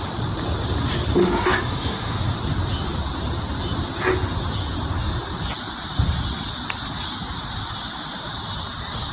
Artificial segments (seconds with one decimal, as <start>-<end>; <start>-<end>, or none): 1.2-2.2